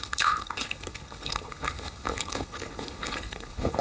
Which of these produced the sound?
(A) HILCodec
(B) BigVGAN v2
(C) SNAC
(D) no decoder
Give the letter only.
A